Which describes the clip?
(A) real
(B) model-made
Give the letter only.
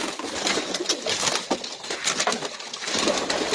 A